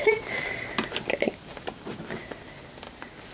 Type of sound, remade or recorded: recorded